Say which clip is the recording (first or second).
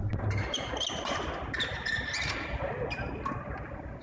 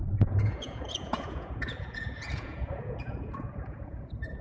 first